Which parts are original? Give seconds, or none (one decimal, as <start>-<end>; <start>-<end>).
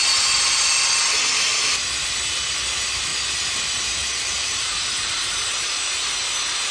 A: 0.0-4.4; 6.1-6.7